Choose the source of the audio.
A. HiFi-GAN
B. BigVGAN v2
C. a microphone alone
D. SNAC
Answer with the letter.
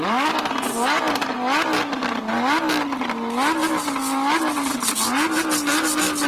C